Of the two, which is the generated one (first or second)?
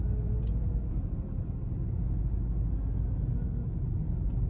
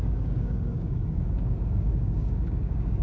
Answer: second